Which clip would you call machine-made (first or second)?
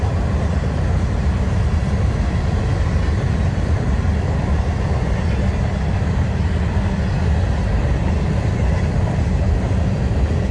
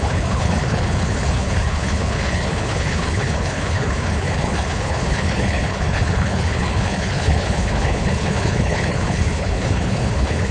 second